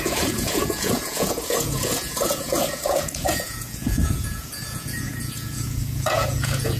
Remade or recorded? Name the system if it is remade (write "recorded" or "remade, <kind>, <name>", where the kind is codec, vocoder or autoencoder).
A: remade, vocoder, Vocos